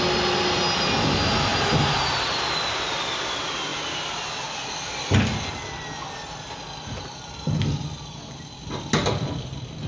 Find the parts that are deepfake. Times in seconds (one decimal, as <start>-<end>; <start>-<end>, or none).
none